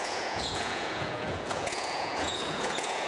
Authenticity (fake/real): fake